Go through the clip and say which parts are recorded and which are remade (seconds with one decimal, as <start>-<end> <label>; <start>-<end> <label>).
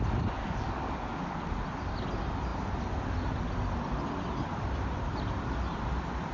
0.0-0.4 recorded; 0.4-1.5 remade; 1.5-6.3 recorded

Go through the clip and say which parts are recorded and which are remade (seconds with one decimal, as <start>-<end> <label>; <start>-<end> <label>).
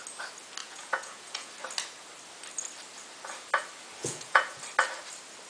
0.0-0.6 recorded; 0.6-1.5 remade; 1.5-4.0 recorded; 4.0-4.6 remade; 4.6-5.5 recorded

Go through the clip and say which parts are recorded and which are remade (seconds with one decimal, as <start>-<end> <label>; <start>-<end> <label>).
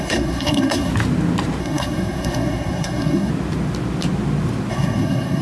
0.0-0.9 remade; 0.9-1.6 recorded; 1.6-3.3 remade; 3.3-4.7 recorded; 4.7-5.4 remade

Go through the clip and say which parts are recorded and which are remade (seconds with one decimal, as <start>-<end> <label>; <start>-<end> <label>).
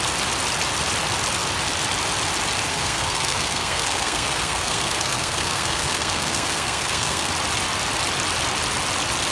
0.0-2.7 recorded; 2.7-7.3 remade; 7.3-9.3 recorded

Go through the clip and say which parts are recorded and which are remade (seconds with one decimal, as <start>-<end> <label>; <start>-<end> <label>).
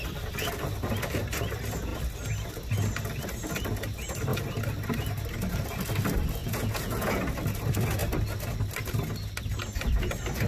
0.0-6.4 recorded; 6.4-7.2 remade; 7.2-10.5 recorded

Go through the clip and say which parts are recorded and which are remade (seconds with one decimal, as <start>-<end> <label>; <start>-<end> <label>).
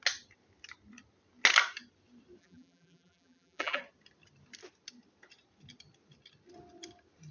0.0-2.4 recorded; 2.4-3.8 remade; 3.8-7.3 recorded